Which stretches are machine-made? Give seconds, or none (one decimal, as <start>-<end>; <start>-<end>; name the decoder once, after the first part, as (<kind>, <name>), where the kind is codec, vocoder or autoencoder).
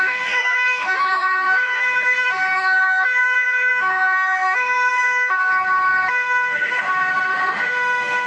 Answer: 0.0-5.5 (autoencoder, DAC-VAE); 6.1-8.3